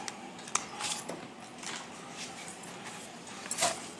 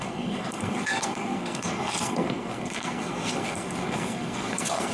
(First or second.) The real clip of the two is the first